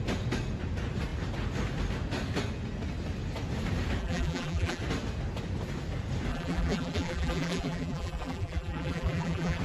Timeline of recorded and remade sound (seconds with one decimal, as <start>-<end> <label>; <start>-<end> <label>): 0.0-4.0 recorded; 4.0-4.8 remade; 4.8-6.3 recorded; 6.3-9.6 remade